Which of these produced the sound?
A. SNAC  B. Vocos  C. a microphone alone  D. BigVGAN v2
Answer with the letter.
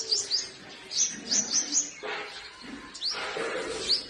C